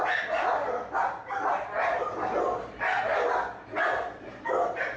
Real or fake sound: real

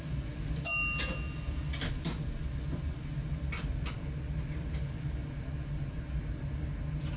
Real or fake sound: real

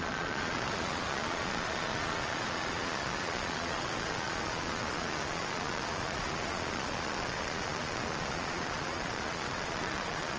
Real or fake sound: fake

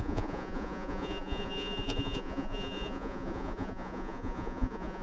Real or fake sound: fake